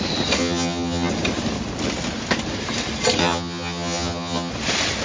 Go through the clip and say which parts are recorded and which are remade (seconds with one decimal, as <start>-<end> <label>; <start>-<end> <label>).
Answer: 0.0-0.4 recorded; 0.4-1.1 remade; 1.1-3.2 recorded; 3.2-4.5 remade; 4.5-5.0 recorded